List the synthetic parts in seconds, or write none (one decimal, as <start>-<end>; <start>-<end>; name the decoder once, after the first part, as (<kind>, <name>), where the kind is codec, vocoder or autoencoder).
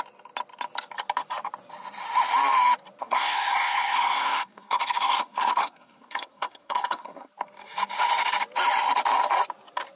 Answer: 3.0-7.3 (codec, SNAC)